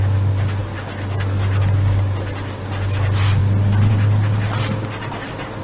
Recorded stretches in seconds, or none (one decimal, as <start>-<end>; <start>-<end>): 0.0-5.6